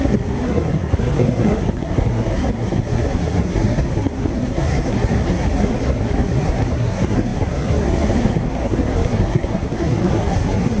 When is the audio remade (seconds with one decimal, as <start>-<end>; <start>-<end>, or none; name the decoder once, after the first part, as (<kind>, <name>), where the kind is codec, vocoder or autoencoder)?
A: 0.0-10.8 (codec, SNAC)